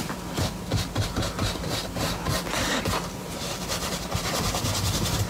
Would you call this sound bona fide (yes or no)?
no